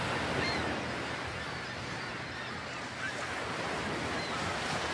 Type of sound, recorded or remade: recorded